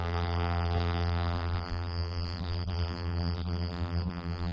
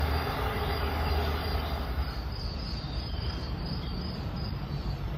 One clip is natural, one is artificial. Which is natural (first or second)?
second